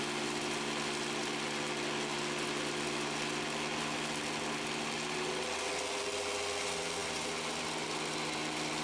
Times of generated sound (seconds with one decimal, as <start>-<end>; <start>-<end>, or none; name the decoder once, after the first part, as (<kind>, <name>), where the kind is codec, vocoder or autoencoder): none